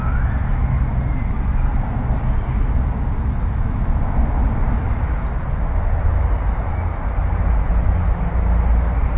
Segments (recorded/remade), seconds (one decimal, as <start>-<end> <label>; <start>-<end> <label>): 0.0-0.4 recorded; 0.4-1.3 remade; 1.3-9.2 recorded